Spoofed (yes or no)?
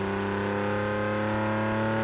no